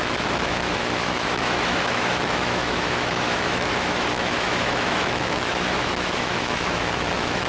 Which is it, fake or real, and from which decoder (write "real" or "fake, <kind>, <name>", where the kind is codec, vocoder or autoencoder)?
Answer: fake, autoencoder, DAC-VAE